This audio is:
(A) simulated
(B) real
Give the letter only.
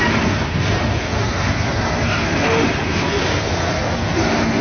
B